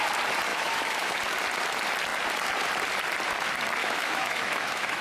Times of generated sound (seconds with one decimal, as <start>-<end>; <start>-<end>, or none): 0.5-1.2; 3.8-5.0